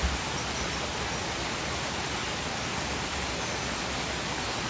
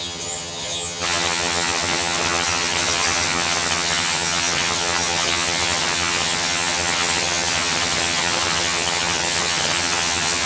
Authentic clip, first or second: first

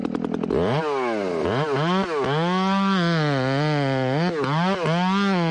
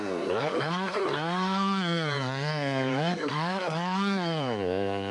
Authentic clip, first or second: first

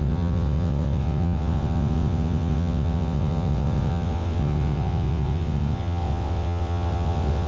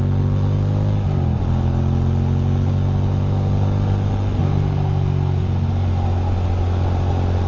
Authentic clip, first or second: second